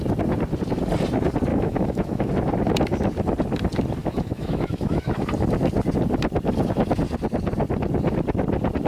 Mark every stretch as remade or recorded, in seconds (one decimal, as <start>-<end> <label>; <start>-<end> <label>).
0.0-1.5 recorded; 1.5-2.3 remade; 2.3-4.0 recorded; 4.0-5.2 remade; 5.2-8.9 recorded